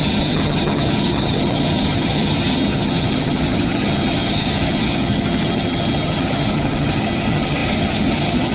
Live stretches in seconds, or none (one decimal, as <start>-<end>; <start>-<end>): none